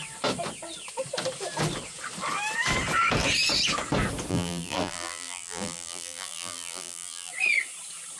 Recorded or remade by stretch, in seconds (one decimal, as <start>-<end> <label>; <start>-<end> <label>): 0.0-4.3 recorded; 4.3-7.3 remade; 7.3-8.2 recorded